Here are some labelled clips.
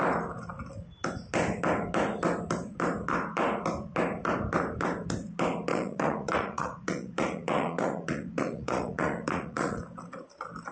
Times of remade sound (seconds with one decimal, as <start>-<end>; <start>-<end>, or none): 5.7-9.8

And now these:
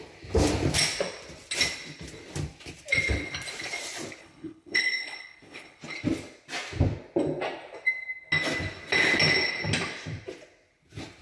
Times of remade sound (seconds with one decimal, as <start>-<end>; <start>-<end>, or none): 4.2-5.8

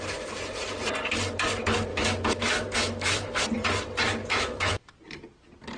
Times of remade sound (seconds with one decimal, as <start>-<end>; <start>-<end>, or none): 1.9-3.4; 4.2-4.9